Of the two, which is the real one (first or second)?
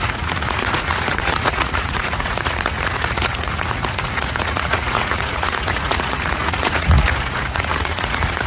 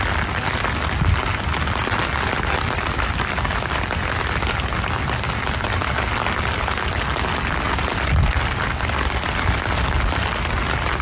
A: second